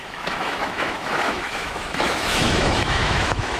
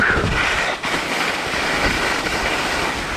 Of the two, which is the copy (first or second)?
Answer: first